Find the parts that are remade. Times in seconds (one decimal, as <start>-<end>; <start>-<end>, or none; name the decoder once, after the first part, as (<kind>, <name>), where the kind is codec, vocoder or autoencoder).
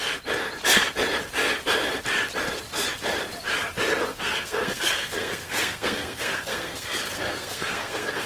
4.1-8.3 (codec, SNAC)